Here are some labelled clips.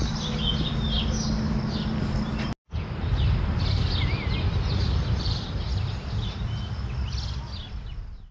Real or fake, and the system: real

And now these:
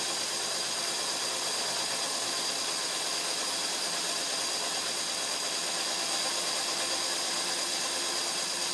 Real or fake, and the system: real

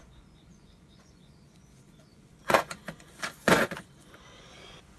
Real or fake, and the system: fake, vocoder, Vocos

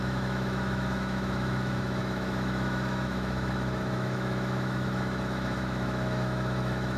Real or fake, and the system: fake, autoencoder, DAC-VAE